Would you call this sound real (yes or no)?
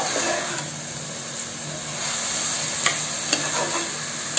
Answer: yes